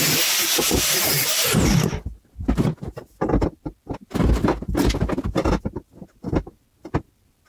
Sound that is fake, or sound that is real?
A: real